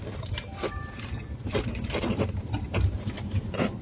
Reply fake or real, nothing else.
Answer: fake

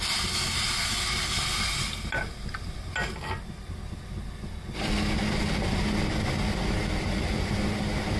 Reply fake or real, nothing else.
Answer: real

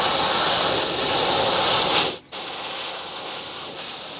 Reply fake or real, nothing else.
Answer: real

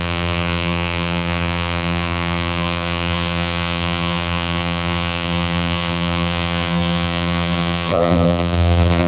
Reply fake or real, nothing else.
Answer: fake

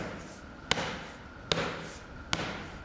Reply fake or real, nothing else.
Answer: real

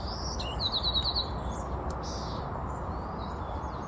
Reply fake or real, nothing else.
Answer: real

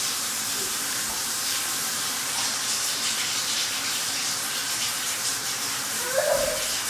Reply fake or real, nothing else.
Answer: fake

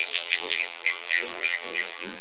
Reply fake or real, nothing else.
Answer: fake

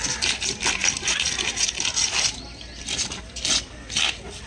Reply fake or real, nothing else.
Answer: real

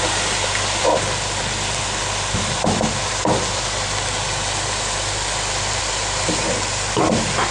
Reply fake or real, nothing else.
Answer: fake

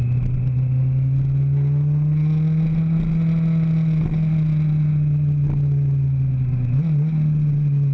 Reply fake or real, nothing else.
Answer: real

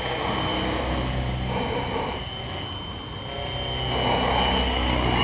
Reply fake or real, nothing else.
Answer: real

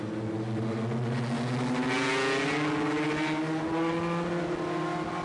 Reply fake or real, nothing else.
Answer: real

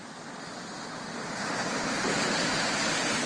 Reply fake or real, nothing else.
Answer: real